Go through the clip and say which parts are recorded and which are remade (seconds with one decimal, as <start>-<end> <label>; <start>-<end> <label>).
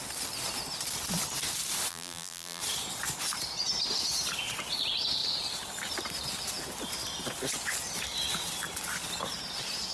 0.0-1.9 recorded; 1.9-2.6 remade; 2.6-9.9 recorded